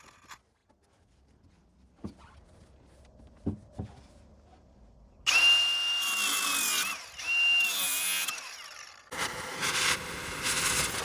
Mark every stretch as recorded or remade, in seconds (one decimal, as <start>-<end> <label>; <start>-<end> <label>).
0.0-11.0 recorded